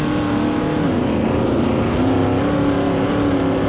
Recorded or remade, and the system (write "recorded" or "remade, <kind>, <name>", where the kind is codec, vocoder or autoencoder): recorded